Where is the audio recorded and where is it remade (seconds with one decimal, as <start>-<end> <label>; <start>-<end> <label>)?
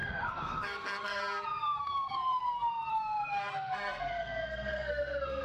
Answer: 0.0-1.2 remade; 1.2-1.6 recorded; 1.6-2.4 remade; 2.4-2.9 recorded; 2.9-5.4 remade